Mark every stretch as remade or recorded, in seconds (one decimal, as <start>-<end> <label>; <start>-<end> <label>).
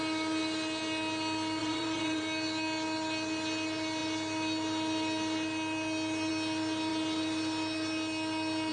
0.0-1.6 recorded; 1.6-2.2 remade; 2.2-8.7 recorded